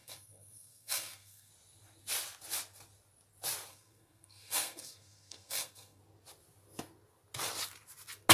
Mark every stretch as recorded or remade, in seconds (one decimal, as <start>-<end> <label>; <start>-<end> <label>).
0.0-1.5 remade; 1.5-3.7 recorded; 3.7-6.0 remade; 6.0-8.3 recorded